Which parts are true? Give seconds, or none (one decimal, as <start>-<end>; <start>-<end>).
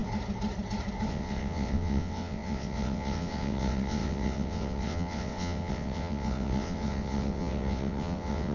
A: 0.0-1.1